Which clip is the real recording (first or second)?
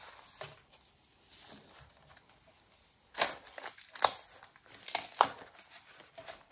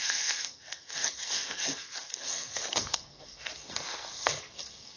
first